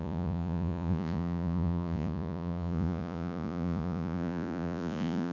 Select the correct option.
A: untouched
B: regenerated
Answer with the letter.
B